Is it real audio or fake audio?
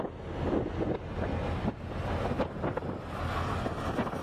real